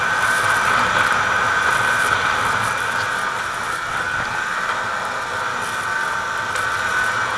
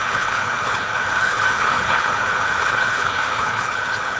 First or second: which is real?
first